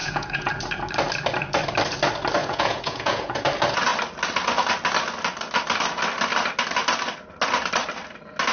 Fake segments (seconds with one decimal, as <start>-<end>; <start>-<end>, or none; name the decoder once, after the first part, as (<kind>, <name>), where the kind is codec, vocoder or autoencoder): 0.0-0.5 (vocoder, Vocos); 2.4-3.4